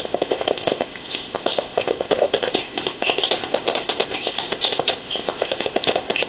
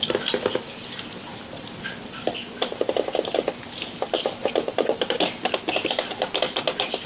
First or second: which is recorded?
second